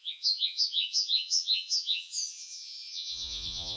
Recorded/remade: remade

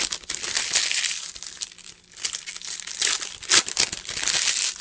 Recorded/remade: recorded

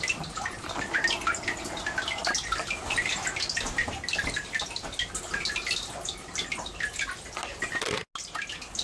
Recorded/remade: recorded